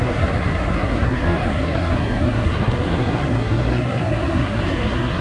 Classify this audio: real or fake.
fake